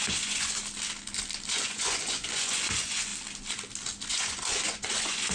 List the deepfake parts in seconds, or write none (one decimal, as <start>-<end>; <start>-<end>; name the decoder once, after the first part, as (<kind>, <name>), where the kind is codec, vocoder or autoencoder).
0.0-0.6 (vocoder, Vocos); 1.5-3.1; 4.1-5.3